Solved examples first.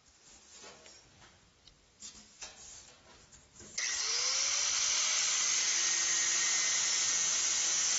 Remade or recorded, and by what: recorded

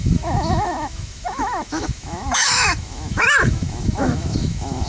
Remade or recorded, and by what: remade, autoencoder, DAC-VAE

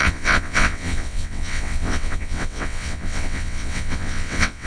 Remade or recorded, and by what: remade, vocoder, WaveNeXt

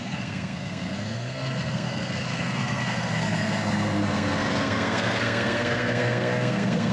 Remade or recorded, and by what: remade, codec, SNAC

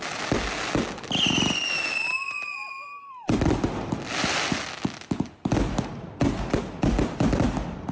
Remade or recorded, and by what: recorded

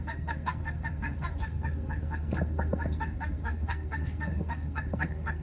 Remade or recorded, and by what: remade, codec, SNAC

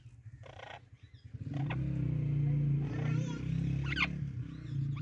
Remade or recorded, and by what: recorded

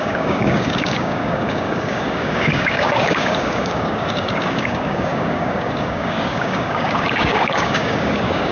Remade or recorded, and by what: remade, codec, DAC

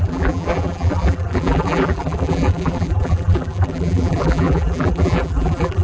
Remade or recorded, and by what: remade, vocoder, BigVGAN v2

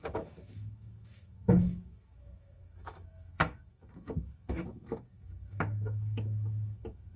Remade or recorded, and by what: remade, autoencoder, DAC-VAE